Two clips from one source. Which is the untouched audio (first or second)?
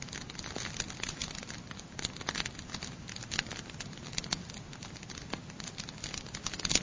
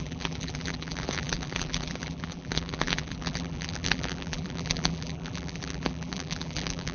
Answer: first